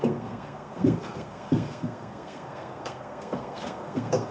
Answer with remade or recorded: remade